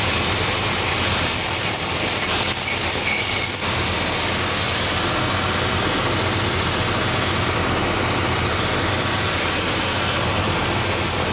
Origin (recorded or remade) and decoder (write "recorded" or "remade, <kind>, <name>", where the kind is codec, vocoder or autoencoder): recorded